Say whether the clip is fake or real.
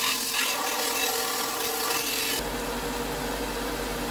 real